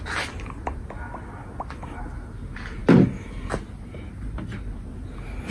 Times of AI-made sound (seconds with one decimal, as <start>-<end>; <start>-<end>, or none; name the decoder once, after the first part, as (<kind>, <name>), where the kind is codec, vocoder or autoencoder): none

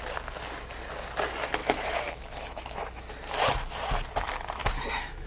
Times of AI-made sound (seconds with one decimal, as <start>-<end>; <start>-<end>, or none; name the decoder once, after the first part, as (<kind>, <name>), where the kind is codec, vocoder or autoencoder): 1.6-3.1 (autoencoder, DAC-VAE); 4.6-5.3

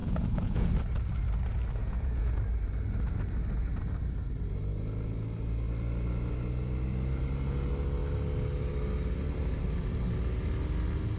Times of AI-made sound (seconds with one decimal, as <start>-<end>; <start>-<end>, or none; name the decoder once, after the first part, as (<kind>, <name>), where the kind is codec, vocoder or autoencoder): 0.0-0.7 (vocoder, Vocos); 1.8-2.4

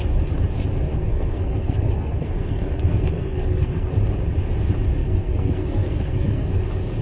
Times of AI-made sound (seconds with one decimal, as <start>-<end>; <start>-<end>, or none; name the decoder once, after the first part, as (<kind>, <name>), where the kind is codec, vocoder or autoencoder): 0.9-3.9 (codec, SNAC); 5.0-6.5

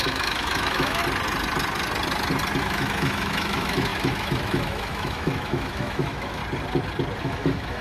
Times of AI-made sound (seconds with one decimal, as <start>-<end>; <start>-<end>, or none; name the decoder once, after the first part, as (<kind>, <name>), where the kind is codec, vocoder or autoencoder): 0.0-1.0 (autoencoder, DAC-VAE); 2.6-6.4; 7.2-7.8